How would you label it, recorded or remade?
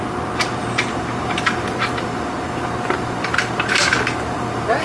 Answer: remade